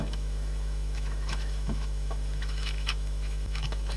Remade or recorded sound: remade